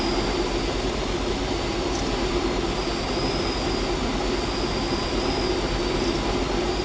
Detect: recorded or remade recorded